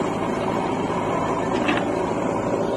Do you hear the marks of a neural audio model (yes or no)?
yes